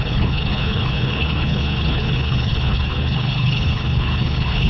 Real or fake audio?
fake